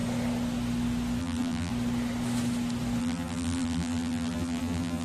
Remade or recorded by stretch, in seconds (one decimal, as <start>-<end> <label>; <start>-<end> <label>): 0.0-1.2 recorded; 1.2-1.7 remade; 1.7-3.0 recorded; 3.0-5.0 remade